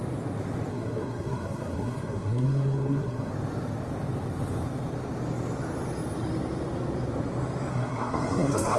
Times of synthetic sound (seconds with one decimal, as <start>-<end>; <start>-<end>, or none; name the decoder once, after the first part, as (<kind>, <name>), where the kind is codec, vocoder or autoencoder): 0.7-3.3 (codec, SNAC); 7.7-8.8